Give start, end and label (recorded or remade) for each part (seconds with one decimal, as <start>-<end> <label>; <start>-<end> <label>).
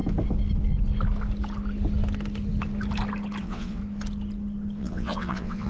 0.0-3.4 recorded; 3.4-3.8 remade; 3.8-4.8 recorded; 4.8-5.7 remade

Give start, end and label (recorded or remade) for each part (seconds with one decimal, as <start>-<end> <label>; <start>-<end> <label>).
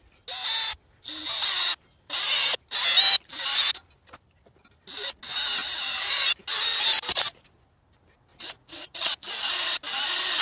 0.0-8.3 recorded; 8.3-9.5 remade; 9.5-10.4 recorded